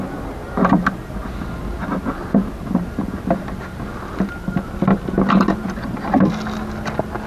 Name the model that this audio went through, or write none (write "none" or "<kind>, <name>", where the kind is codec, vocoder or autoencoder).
none